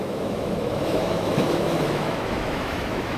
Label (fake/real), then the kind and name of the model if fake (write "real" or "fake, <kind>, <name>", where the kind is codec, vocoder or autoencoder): fake, autoencoder, DAC-VAE